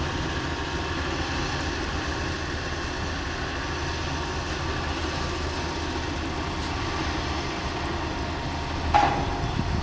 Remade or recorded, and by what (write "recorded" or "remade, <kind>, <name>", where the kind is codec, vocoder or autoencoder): recorded